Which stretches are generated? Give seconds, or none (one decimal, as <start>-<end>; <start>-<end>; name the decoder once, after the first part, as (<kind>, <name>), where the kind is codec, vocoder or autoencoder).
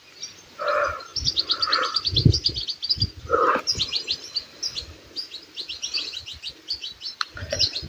none